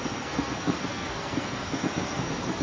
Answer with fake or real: fake